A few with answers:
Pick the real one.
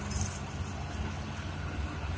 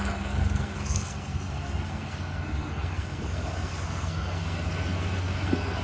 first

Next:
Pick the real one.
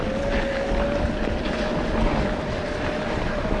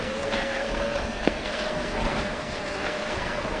first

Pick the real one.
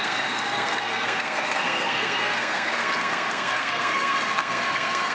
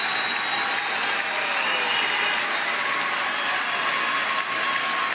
second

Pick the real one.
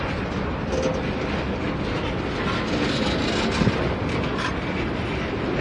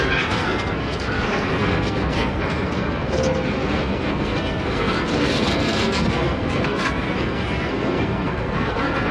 first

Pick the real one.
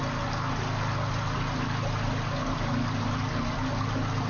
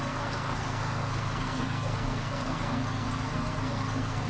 first